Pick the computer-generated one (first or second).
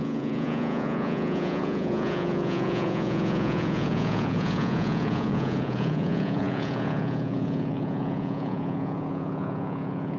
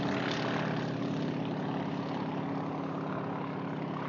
first